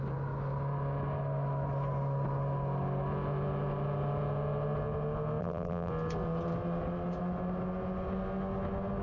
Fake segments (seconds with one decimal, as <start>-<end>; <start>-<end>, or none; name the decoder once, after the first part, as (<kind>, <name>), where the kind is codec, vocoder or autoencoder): 5.4-5.9 (vocoder, BigVGAN v2)